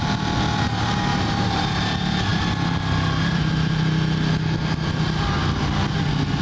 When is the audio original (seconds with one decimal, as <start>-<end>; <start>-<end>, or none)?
0.0-1.1; 1.6-6.4